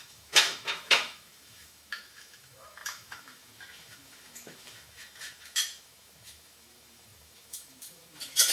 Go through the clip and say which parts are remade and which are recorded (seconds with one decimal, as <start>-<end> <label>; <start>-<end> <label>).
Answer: 0.0-8.5 remade